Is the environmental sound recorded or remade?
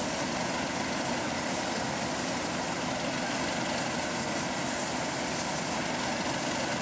recorded